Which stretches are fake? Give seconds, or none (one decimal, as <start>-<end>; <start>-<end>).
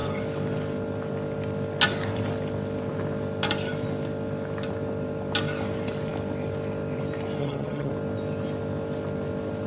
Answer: 7.4-7.9